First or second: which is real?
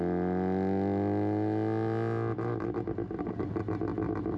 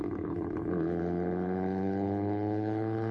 first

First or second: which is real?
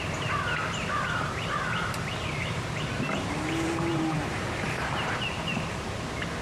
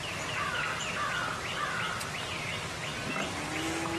second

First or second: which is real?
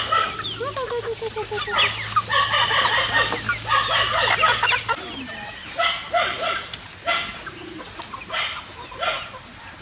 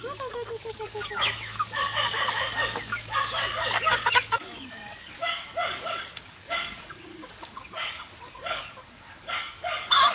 first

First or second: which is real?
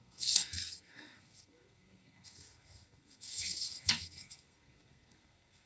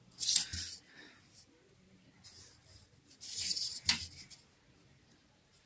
second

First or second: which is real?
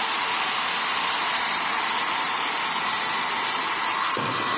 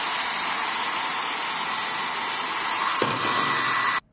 second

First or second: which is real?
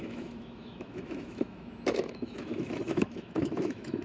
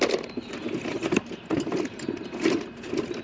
second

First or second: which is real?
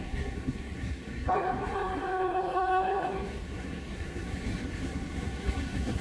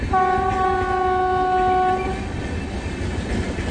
second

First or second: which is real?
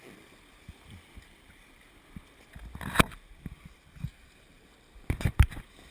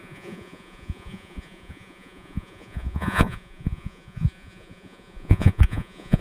first